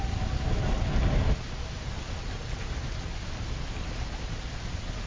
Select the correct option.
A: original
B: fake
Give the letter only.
A